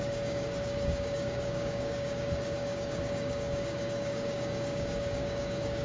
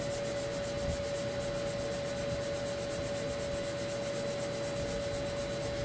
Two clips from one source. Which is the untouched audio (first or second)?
second